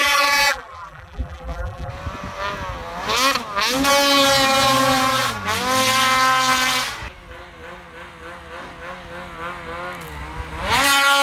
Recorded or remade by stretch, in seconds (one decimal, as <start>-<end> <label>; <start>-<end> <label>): 0.0-1.9 remade; 1.9-11.2 recorded